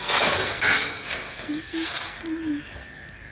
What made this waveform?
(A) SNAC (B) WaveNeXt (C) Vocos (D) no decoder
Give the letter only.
A